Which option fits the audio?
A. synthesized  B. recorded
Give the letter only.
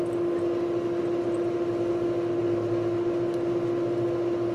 B